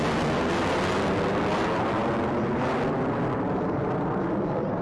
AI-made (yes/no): no